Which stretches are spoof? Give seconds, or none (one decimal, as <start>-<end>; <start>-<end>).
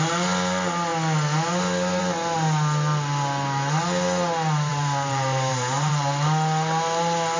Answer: 4.7-5.9